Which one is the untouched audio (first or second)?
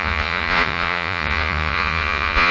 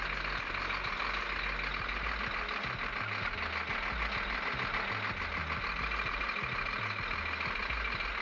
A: second